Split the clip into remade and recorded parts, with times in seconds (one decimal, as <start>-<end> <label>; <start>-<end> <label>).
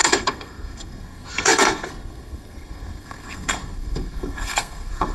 0.0-5.1 remade